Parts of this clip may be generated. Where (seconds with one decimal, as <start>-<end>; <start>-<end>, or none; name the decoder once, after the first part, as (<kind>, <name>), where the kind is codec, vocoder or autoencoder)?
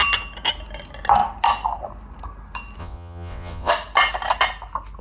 2.8-3.7 (vocoder, WaveNeXt)